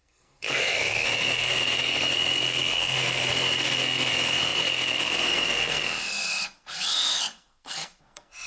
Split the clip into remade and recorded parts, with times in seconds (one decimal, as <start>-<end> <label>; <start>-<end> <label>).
0.0-8.5 remade